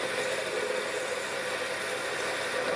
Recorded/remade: recorded